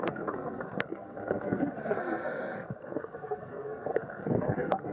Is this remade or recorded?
remade